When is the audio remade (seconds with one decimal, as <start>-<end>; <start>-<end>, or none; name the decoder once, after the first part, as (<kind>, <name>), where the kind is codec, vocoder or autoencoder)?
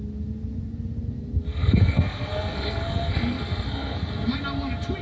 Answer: 1.5-4.1 (codec, SNAC)